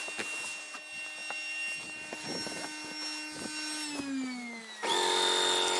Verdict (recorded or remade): recorded